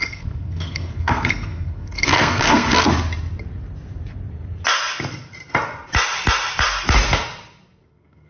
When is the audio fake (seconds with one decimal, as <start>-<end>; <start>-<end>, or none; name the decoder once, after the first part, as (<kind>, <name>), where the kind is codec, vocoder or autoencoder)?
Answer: 0.0-2.9 (codec, SNAC); 7.9-8.3